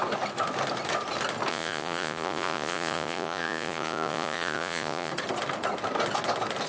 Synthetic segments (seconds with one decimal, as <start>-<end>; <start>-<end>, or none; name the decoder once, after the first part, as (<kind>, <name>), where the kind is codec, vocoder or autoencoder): 1.5-5.1 (vocoder, Vocos)